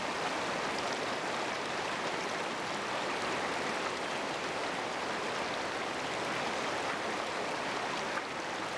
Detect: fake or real real